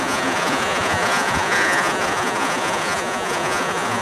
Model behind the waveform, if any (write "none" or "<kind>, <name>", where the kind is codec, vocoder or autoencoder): vocoder, Vocos